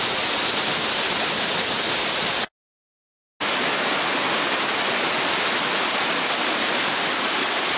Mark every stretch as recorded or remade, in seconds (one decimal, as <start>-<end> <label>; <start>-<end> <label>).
0.0-7.8 recorded